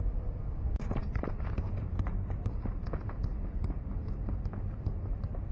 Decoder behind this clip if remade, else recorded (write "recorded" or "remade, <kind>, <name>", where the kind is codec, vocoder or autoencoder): recorded